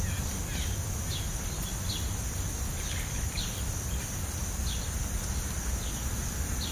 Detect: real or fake real